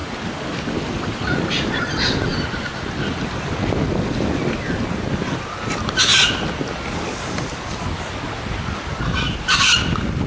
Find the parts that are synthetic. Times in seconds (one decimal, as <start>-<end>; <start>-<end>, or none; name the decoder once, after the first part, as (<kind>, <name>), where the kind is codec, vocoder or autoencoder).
0.0-1.8 (vocoder, BigVGAN v2)